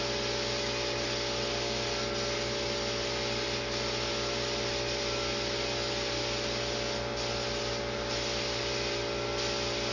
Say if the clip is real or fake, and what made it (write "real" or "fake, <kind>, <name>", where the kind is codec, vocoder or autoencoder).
real